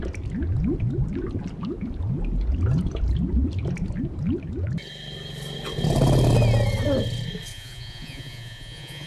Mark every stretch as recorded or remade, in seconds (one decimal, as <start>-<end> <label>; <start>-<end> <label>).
0.0-7.5 recorded; 7.5-9.1 remade